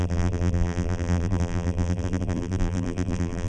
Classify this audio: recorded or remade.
remade